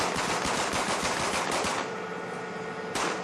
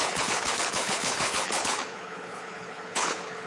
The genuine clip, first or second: first